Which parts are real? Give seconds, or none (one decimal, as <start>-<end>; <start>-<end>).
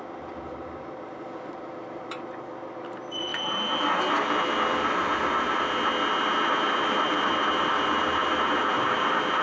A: 3.3-6.5